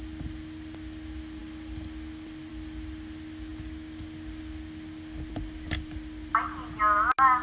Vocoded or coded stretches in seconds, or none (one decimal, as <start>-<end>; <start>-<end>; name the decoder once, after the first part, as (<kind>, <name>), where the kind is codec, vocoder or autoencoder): none